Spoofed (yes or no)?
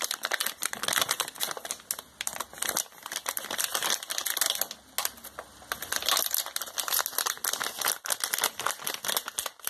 no